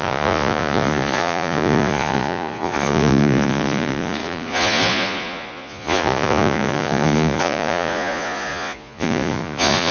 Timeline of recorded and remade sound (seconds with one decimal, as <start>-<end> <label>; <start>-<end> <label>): 0.0-9.9 remade

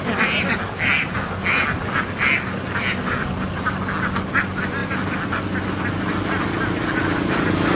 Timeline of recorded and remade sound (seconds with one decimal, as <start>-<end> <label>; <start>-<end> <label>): 0.0-7.8 recorded

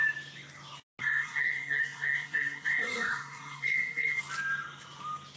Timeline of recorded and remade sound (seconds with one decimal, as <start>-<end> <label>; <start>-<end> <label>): 0.0-1.0 recorded; 1.0-4.2 remade; 4.2-5.4 recorded

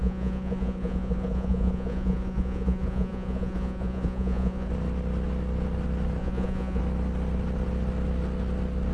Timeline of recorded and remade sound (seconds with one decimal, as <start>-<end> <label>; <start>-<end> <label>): 0.0-4.7 remade; 4.7-6.2 recorded; 6.2-6.8 remade; 6.8-8.9 recorded

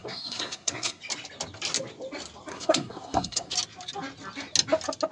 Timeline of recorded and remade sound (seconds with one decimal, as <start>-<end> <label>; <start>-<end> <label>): 0.0-1.0 remade; 1.0-2.5 recorded; 2.5-3.5 remade; 3.5-5.1 recorded

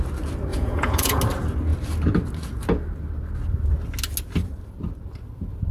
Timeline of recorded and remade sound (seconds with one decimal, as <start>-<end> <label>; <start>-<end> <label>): 0.0-0.5 recorded; 0.5-1.2 remade; 1.2-5.7 recorded

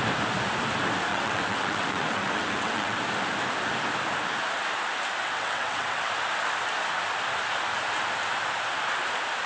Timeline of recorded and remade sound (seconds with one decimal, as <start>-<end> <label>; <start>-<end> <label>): 0.0-1.1 recorded; 1.1-3.0 remade; 3.0-5.2 recorded; 5.2-6.1 remade; 6.1-9.5 recorded